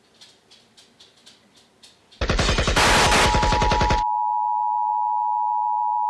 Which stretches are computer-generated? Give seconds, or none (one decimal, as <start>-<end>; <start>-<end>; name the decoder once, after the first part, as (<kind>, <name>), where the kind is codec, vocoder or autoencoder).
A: none